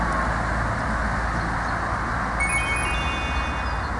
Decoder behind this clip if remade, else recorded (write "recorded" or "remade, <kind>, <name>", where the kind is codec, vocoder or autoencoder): recorded